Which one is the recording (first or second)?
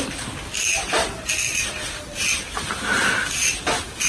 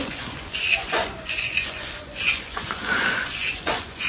first